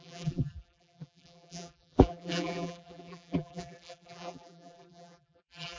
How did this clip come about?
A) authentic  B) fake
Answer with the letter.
B